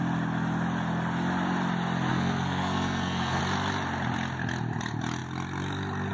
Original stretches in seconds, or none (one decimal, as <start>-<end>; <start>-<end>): 0.0-2.1; 3.4-6.1